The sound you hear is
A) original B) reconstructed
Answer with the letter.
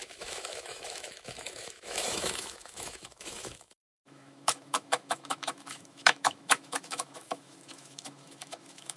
B